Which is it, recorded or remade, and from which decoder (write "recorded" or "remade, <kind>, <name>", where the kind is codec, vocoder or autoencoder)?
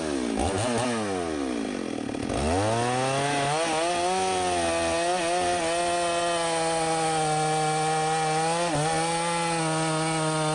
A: recorded